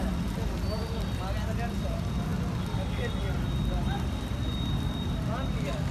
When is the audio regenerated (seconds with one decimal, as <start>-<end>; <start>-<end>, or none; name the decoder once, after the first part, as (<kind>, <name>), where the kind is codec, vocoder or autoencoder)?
none